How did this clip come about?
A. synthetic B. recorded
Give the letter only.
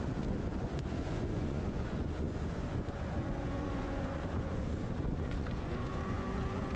A